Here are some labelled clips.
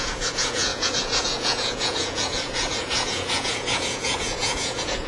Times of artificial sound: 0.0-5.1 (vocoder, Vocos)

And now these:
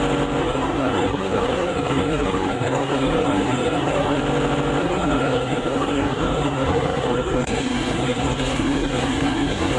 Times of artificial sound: 0.4-4.2 (codec, SNAC); 4.8-9.8